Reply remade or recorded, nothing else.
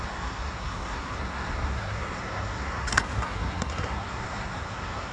remade